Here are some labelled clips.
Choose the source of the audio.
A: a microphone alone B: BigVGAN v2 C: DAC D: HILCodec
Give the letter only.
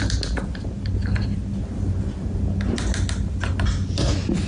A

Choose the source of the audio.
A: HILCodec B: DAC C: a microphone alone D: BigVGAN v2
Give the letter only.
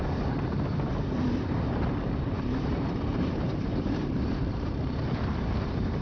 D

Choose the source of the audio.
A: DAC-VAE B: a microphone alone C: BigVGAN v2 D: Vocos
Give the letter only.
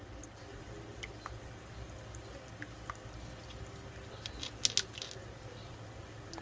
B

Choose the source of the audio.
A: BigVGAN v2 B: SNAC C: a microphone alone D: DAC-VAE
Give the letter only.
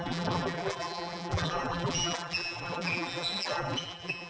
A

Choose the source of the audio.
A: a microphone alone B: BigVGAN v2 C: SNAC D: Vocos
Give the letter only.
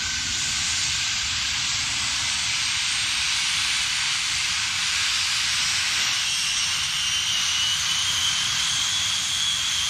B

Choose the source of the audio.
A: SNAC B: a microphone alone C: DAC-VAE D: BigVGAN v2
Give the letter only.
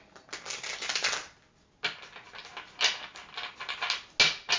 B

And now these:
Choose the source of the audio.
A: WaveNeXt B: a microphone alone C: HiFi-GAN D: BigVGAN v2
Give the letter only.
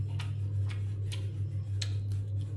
B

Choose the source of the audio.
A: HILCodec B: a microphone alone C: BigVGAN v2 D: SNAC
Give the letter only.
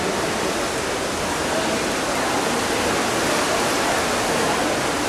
B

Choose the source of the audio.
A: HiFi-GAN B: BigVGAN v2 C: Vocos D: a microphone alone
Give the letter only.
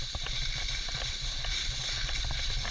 B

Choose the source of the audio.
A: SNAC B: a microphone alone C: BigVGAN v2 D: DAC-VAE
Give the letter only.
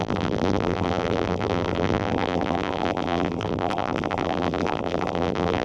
C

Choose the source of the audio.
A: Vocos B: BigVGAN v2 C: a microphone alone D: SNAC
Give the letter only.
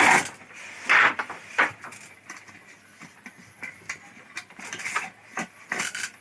B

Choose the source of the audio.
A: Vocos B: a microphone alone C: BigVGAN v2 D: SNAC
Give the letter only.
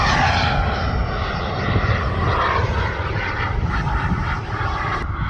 B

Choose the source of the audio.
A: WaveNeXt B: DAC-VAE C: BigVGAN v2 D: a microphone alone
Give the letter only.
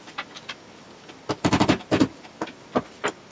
C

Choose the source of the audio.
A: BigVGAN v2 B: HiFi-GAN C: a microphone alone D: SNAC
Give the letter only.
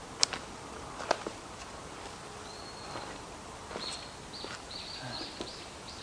A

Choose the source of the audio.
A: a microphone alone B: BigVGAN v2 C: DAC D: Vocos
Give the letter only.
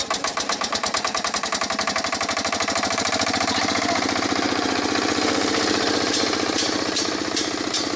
B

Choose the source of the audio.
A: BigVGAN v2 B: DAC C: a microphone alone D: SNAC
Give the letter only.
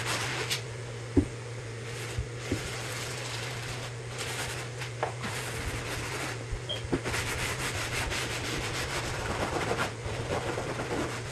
C